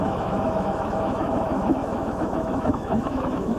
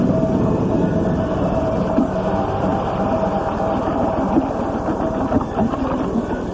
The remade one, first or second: first